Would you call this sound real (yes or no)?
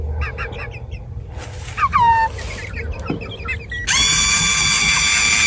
yes